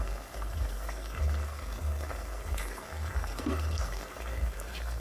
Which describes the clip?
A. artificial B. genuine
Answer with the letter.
A